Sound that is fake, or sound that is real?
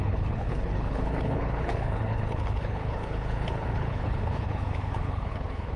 fake